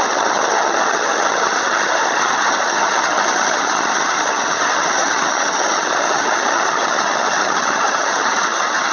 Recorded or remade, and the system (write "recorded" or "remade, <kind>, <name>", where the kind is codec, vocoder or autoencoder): remade, vocoder, HiFi-GAN